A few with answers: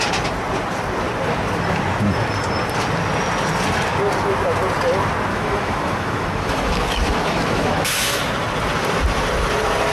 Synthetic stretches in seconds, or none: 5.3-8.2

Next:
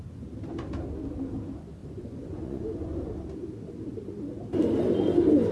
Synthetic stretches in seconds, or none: 1.8-3.1

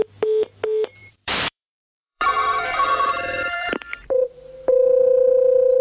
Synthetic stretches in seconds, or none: 1.0-4.5

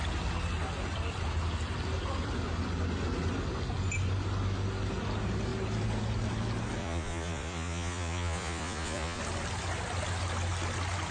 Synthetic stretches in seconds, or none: 6.8-9.2

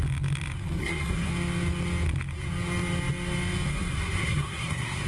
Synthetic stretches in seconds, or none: 0.8-1.3; 3.7-5.1